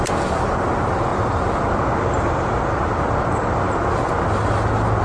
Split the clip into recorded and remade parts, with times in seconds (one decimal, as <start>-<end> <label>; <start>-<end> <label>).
0.0-5.0 recorded